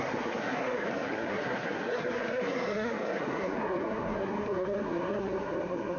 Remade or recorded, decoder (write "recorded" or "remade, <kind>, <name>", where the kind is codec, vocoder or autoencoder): remade, codec, SNAC